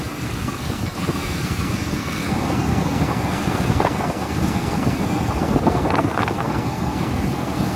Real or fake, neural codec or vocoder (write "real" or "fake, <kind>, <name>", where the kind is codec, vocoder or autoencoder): fake, codec, SNAC